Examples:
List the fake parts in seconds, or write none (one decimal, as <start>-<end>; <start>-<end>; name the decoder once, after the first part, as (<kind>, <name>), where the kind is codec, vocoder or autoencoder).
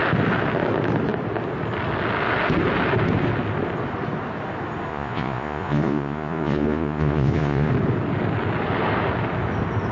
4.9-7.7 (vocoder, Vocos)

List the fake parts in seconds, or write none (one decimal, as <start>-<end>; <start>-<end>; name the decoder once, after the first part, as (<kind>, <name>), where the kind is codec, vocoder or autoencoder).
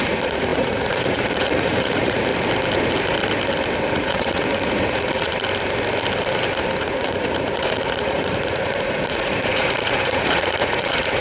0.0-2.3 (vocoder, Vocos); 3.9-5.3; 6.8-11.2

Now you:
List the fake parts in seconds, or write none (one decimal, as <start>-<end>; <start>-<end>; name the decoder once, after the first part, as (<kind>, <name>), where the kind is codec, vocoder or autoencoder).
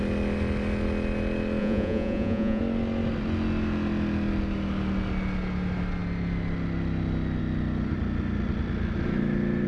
1.6-2.6 (vocoder, Vocos)